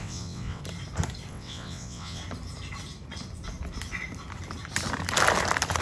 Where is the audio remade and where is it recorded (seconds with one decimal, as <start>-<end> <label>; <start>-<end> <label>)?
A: 0.0-0.6 remade; 0.6-1.3 recorded; 1.3-2.2 remade; 2.2-5.8 recorded